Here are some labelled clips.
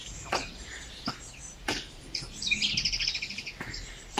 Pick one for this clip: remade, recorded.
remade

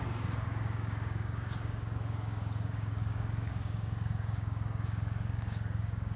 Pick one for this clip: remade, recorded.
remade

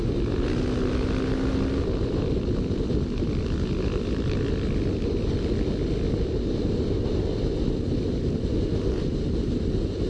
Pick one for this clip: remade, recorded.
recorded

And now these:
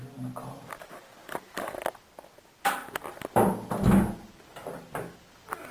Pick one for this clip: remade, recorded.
recorded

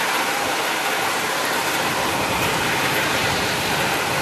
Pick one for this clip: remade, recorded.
remade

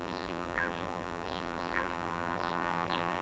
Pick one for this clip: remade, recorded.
remade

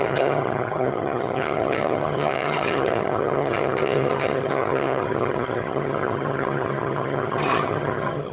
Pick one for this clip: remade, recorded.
remade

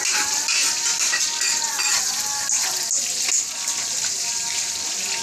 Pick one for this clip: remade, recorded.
recorded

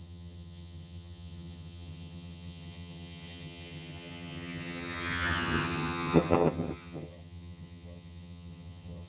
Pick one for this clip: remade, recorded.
remade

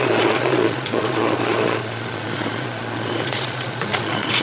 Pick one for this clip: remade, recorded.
remade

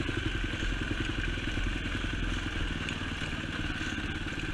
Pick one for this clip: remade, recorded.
recorded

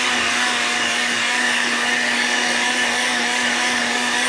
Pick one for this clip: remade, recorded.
remade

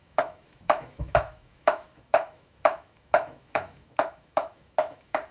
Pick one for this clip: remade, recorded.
remade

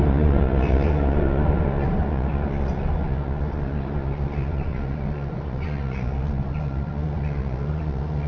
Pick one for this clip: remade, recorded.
remade